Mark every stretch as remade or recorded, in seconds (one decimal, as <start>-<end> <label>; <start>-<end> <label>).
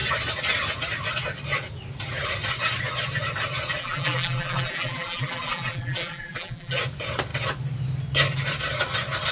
0.0-3.8 recorded; 3.8-6.8 remade; 6.8-9.3 recorded